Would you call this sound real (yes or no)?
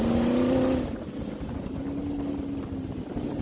yes